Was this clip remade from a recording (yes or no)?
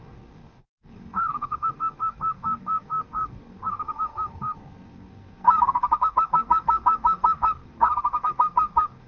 yes